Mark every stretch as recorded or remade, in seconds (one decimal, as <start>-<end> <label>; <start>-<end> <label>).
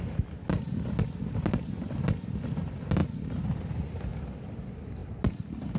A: 0.0-5.8 recorded